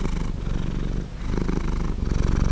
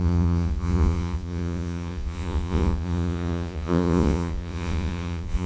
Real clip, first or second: first